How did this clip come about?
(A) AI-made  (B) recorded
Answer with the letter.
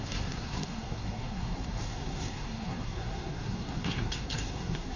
A